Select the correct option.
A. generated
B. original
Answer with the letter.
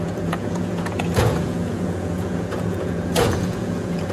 A